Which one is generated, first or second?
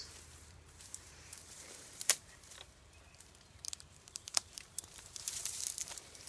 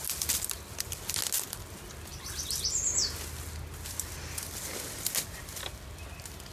first